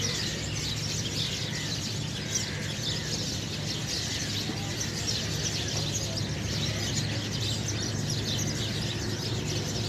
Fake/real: real